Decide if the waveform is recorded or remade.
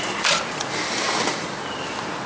recorded